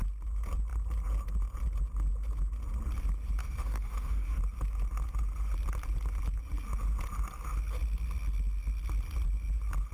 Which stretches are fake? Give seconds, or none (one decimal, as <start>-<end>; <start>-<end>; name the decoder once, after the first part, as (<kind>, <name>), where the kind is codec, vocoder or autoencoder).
3.4-4.4 (codec, DAC)